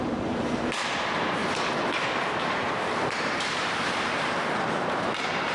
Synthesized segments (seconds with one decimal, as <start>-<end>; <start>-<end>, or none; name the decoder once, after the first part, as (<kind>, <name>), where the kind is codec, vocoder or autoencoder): 0.0-1.4 (vocoder, BigVGAN v2); 2.4-5.5

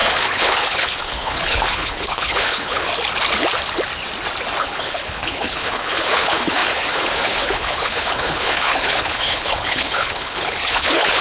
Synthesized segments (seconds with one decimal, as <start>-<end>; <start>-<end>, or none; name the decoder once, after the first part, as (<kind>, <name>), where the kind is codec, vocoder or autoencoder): 0.0-2.9 (codec, HILCodec); 4.6-11.2